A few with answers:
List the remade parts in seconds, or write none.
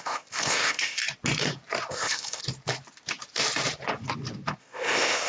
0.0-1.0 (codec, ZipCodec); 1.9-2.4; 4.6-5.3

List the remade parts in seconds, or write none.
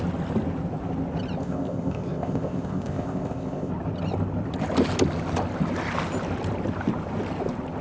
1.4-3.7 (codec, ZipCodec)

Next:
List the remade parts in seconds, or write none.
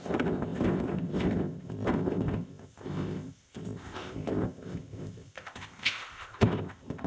0.0-7.1 (codec, ZipCodec)